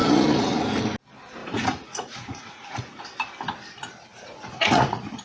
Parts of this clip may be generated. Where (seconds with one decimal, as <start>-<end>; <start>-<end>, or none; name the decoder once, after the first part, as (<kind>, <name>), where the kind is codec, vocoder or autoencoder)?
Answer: 0.0-0.8 (vocoder, Vocos); 1.4-3.0; 4.1-5.2